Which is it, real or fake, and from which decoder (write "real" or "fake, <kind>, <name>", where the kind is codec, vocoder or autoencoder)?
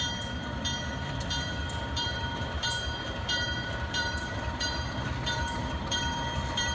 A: fake, vocoder, BigVGAN v2